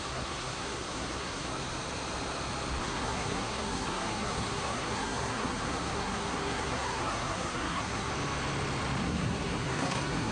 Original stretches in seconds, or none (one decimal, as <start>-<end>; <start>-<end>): 1.5-2.8; 8.1-9.0